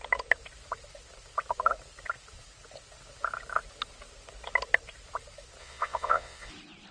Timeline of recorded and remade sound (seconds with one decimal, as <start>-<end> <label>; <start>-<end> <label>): 0.0-5.6 recorded; 5.6-6.5 remade; 6.5-6.9 recorded